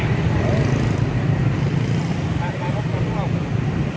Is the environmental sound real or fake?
real